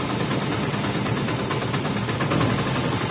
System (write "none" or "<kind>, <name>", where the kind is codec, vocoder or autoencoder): none